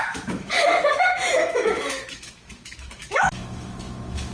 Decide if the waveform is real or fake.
fake